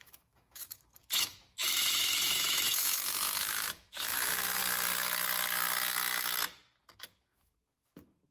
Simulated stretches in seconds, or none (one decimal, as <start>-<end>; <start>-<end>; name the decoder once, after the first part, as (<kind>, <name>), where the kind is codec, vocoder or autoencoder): 0.0-4.6 (autoencoder, DAC-VAE); 6.8-8.3